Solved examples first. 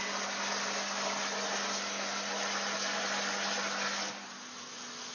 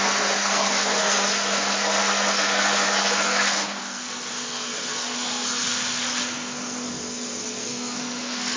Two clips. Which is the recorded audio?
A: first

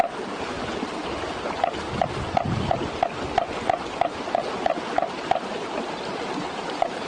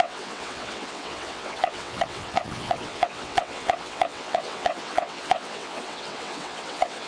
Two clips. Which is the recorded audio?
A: first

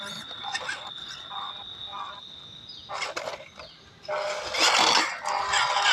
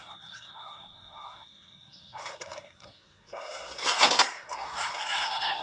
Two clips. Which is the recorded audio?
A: first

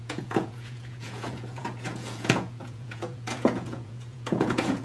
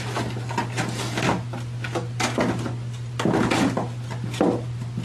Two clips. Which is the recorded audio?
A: second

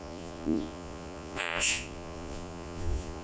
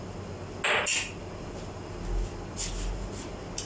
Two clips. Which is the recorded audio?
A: second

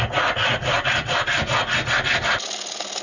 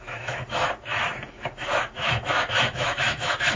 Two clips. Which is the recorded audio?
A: first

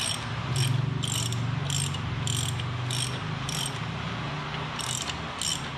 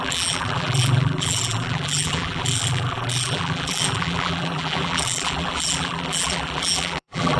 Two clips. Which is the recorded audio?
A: first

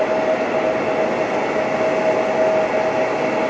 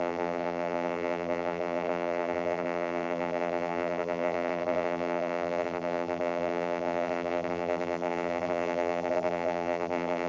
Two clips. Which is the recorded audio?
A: first